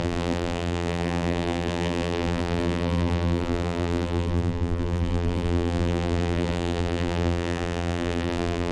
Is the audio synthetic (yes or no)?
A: yes